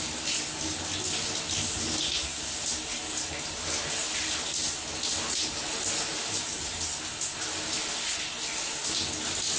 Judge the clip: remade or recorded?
recorded